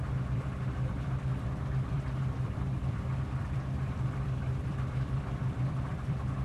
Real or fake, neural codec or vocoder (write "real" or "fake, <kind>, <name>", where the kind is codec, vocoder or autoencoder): fake, vocoder, BigVGAN v2